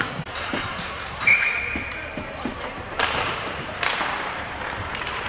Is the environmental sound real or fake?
fake